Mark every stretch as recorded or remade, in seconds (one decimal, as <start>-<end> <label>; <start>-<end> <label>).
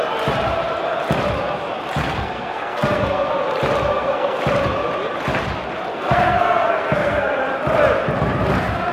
0.0-2.0 recorded; 2.0-3.3 remade; 3.3-3.9 recorded; 3.9-4.4 remade; 4.4-5.9 recorded; 5.9-7.4 remade; 7.4-8.9 recorded